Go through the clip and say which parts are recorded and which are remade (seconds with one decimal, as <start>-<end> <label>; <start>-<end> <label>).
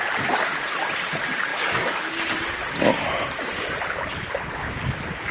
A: 0.0-1.5 recorded; 1.5-2.1 remade; 2.1-5.3 recorded